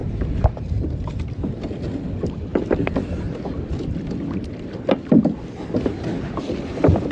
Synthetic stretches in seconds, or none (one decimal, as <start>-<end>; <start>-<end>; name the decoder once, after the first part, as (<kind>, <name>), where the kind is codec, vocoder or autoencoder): 0.0-0.6 (vocoder, BigVGAN v2)